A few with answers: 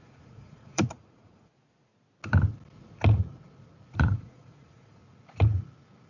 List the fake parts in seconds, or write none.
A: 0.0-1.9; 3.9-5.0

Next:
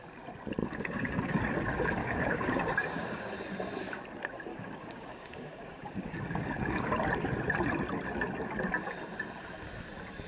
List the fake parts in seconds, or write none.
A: 0.6-1.4; 2.0-3.2; 4.5-6.9

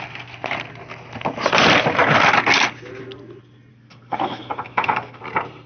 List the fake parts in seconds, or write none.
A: 3.7-5.2

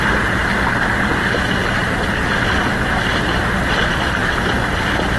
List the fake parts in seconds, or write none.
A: 0.0-5.2

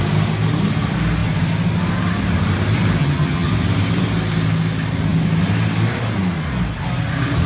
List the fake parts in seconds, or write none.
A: 3.0-3.5

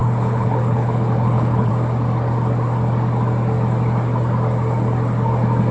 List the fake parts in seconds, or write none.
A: 0.0-1.7

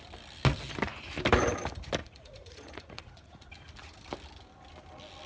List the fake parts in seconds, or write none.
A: 2.0-3.5

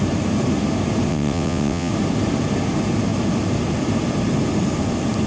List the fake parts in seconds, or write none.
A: 1.1-1.9